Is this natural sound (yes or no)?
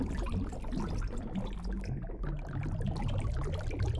yes